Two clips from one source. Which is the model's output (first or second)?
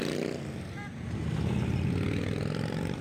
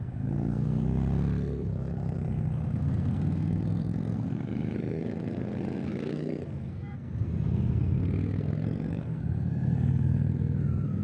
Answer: second